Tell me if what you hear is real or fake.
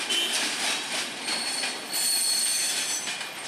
real